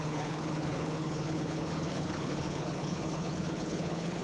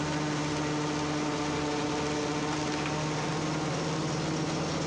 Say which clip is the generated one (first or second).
first